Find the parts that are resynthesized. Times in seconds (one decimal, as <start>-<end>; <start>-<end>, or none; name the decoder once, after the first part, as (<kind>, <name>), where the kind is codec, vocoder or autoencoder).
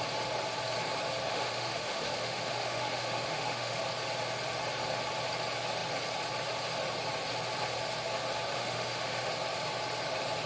1.3-3.8 (autoencoder, DAC-VAE); 8.5-9.3